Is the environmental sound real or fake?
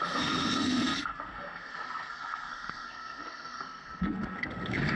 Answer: fake